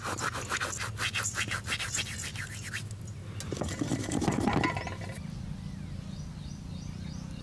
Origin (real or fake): real